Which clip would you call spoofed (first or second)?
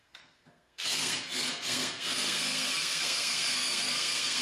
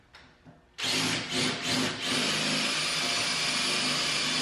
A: first